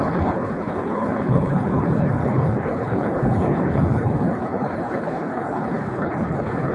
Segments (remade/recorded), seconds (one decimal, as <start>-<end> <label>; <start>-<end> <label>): 0.0-6.7 remade